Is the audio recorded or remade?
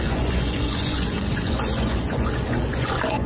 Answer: remade